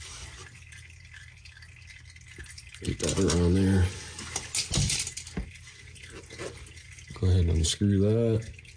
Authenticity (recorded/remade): recorded